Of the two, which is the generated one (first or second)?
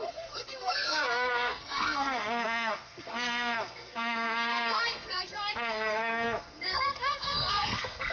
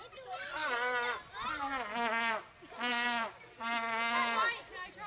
first